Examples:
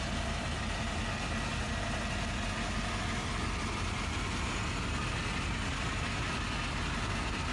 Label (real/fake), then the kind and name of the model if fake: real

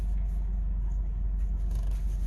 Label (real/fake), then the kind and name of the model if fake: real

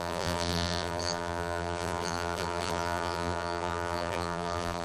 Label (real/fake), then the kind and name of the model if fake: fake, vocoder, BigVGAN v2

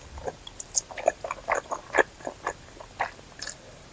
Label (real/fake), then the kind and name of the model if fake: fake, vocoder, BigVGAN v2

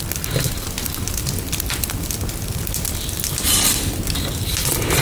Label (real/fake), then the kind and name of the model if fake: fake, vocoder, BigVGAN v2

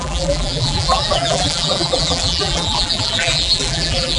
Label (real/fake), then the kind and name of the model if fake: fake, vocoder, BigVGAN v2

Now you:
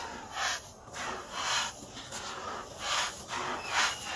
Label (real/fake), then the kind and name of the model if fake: real